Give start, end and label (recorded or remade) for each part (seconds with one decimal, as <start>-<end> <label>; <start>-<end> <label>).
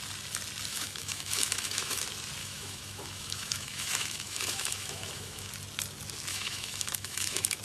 0.0-0.7 recorded; 0.7-2.0 remade; 2.0-2.4 recorded; 2.4-5.5 remade; 5.5-6.3 recorded; 6.3-7.6 remade